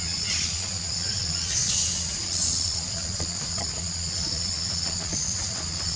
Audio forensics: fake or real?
fake